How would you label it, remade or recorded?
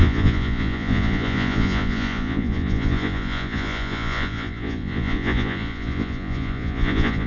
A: remade